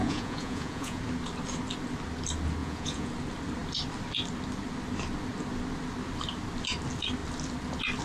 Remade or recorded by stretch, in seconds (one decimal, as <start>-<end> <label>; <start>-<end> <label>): 0.0-1.0 remade; 1.0-2.6 recorded; 2.6-3.1 remade; 3.1-8.0 recorded